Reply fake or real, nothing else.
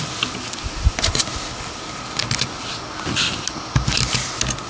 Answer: real